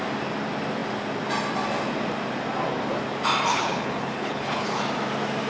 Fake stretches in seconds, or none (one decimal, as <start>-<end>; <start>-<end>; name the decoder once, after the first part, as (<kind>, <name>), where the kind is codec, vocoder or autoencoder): 3.5-4.8 (codec, HILCodec)

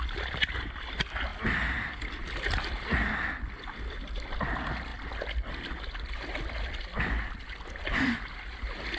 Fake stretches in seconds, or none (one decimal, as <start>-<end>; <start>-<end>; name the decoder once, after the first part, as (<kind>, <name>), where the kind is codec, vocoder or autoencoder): none

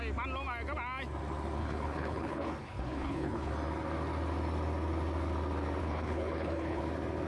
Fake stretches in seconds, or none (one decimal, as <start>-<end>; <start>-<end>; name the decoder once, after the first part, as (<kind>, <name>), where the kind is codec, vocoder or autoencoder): 1.6-3.5 (codec, HILCodec); 5.8-6.8

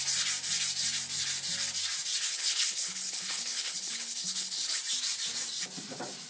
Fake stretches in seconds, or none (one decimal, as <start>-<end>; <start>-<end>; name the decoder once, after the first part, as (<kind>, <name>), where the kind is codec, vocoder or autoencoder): 2.3-4.8 (codec, HILCodec)

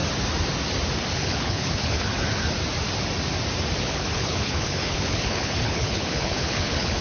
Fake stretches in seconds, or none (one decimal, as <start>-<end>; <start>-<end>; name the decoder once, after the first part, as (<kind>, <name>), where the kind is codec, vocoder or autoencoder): 1.1-2.1 (codec, HILCodec); 3.8-7.0

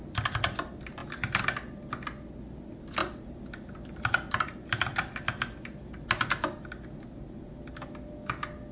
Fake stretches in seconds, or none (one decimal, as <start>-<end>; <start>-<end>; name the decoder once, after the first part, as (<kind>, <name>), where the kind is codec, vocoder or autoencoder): none

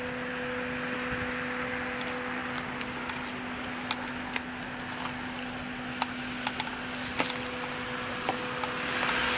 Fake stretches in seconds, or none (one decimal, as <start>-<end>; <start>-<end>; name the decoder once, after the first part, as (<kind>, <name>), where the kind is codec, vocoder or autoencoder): none

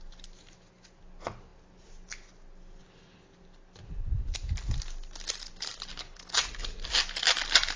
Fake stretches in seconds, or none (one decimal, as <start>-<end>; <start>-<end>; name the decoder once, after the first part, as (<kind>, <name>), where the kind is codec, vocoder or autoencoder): 5.9-6.4 (codec, HILCodec)